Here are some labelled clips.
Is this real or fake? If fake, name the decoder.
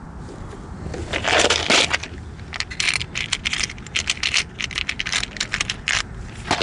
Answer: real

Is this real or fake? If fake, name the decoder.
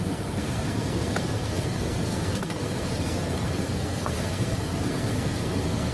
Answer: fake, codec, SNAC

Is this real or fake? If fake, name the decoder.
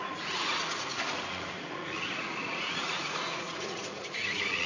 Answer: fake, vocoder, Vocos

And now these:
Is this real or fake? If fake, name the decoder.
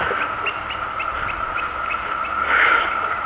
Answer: real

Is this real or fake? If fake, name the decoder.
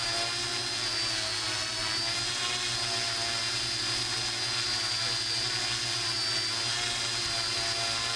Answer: real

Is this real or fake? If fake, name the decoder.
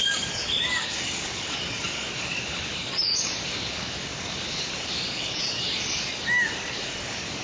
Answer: fake, codec, DAC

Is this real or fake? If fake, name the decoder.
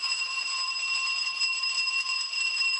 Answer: fake, vocoder, BigVGAN v2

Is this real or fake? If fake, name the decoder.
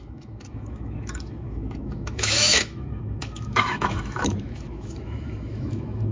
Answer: fake, autoencoder, DAC-VAE